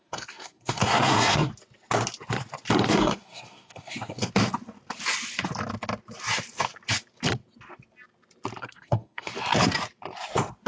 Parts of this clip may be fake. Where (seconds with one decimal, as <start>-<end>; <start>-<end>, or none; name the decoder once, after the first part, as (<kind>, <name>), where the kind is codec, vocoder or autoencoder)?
0.0-1.5 (codec, SNAC); 2.9-4.3; 8.6-9.3

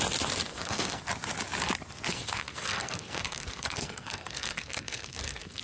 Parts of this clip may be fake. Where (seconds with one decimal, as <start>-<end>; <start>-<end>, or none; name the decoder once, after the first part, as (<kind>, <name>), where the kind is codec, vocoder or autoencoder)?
0.5-1.0 (codec, SNAC); 2.1-5.6

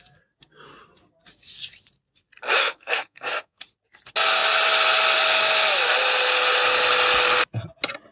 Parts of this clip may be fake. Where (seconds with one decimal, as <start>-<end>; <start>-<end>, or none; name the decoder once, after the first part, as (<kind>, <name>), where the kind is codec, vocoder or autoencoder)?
2.6-3.6 (codec, SNAC)

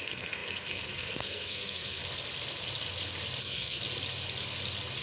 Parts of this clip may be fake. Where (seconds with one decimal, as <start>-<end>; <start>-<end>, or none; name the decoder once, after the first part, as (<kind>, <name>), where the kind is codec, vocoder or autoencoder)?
0.0-2.0 (codec, SNAC); 3.4-3.8

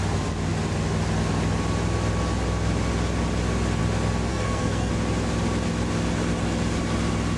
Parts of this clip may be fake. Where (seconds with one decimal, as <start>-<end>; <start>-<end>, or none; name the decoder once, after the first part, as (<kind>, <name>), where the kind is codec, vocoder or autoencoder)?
4.3-4.9 (codec, SNAC)

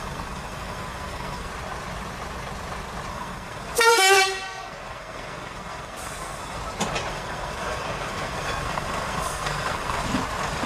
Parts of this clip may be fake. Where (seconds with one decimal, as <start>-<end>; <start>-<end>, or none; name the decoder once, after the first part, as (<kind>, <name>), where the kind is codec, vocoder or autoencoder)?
0.0-1.5 (codec, SNAC); 3.1-6.6; 7.1-10.0

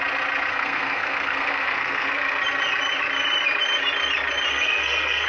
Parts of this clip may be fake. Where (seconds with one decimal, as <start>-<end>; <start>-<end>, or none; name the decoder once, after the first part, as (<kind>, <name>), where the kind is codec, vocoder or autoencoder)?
0.5-2.4 (codec, SNAC); 4.5-5.3

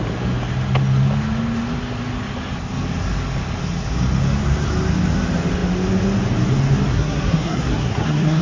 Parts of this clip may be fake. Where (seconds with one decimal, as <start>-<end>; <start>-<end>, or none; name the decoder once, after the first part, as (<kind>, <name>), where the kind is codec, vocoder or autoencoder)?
6.9-8.4 (codec, SNAC)